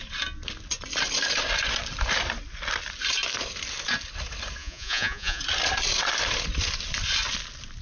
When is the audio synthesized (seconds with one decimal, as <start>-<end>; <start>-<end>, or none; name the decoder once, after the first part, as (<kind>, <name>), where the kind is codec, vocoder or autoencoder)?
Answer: 4.6-5.4 (vocoder, Vocos)